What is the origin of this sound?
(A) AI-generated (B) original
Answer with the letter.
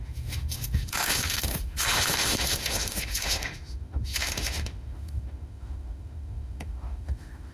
A